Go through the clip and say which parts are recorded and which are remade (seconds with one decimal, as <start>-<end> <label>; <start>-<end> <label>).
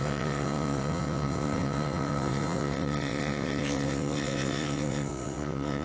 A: 0.0-5.8 remade